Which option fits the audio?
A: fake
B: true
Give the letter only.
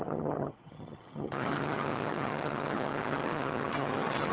A